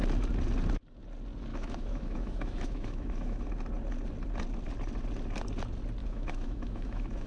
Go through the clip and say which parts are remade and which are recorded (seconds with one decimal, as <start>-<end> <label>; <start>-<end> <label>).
0.0-1.5 recorded; 1.5-3.4 remade; 3.4-6.0 recorded; 6.0-7.3 remade